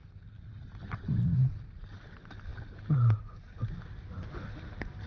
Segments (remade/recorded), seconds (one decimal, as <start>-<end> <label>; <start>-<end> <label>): 0.0-5.1 recorded